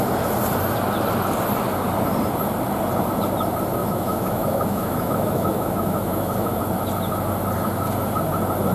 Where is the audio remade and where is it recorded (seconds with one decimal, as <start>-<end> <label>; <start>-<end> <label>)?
0.0-3.8 recorded; 3.8-6.6 remade; 6.6-8.7 recorded

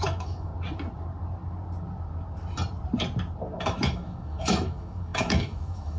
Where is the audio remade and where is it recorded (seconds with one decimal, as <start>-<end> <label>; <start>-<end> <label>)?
0.0-0.5 remade; 0.5-3.6 recorded; 3.6-6.0 remade

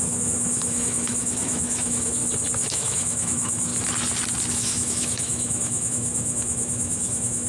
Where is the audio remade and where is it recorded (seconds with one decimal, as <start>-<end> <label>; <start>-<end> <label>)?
0.0-2.2 remade; 2.2-2.7 recorded; 2.7-3.7 remade; 3.7-4.5 recorded; 4.5-7.5 remade

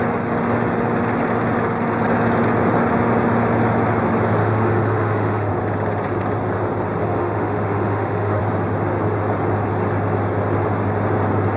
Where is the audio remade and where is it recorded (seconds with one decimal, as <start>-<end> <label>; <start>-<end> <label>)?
0.0-4.4 recorded; 4.4-5.5 remade; 5.5-7.0 recorded; 7.0-8.4 remade; 8.4-11.6 recorded

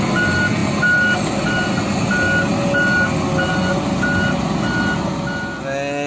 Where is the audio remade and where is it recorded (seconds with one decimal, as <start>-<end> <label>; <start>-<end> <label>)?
0.0-6.1 recorded

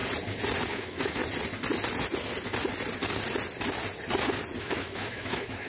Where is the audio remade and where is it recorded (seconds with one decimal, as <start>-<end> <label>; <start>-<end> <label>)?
0.0-0.7 recorded; 0.7-1.2 remade; 1.2-4.6 recorded; 4.6-5.7 remade

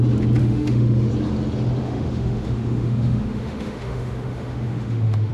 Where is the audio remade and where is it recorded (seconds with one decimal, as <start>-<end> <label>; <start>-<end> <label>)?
0.0-0.4 recorded; 0.4-1.1 remade; 1.1-1.8 recorded; 1.8-5.3 remade

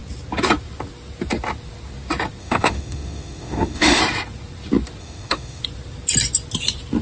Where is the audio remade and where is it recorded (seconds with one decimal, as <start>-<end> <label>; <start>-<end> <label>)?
0.0-2.4 recorded; 2.4-4.0 remade; 4.0-5.0 recorded; 5.0-5.6 remade; 5.6-7.0 recorded